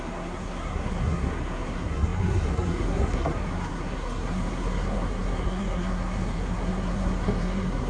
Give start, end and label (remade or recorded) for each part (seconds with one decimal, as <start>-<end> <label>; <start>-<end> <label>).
0.0-7.9 remade